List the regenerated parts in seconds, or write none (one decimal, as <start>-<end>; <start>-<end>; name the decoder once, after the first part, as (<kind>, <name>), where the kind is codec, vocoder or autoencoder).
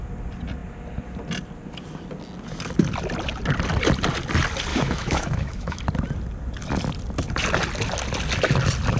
4.7-5.8 (autoencoder, DAC-VAE)